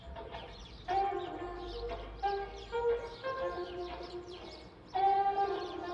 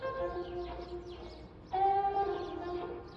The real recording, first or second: second